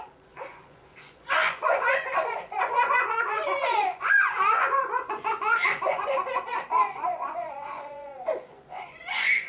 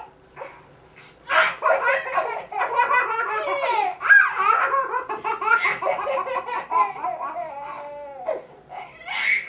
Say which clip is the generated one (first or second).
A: first